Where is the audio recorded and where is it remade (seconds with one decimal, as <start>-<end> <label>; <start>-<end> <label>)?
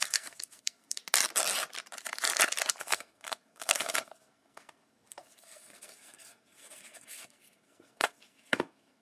0.0-1.0 remade; 1.0-2.8 recorded; 2.8-9.0 remade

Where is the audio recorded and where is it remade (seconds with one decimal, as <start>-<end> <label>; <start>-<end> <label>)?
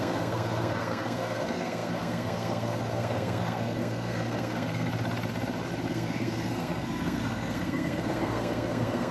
0.0-4.9 remade; 4.9-5.9 recorded; 5.9-9.1 remade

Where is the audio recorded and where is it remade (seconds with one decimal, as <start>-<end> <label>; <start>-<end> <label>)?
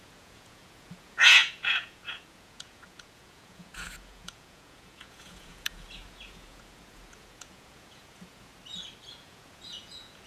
0.0-8.5 remade; 8.5-9.1 recorded; 9.1-10.3 remade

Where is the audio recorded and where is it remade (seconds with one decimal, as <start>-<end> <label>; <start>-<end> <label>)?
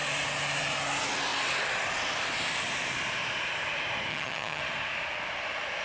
0.0-4.1 recorded; 4.1-4.6 remade; 4.6-5.8 recorded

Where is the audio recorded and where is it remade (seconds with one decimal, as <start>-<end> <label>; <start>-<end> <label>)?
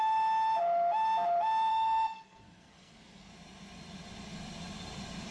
0.0-1.7 recorded; 1.7-3.3 remade; 3.3-5.3 recorded